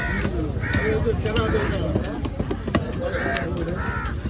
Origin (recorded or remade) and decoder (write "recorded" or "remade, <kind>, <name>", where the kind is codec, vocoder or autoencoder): recorded